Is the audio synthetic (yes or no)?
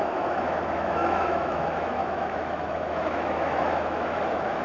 yes